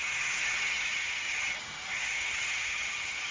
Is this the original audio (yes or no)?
no